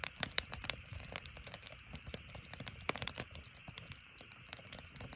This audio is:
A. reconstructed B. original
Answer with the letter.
A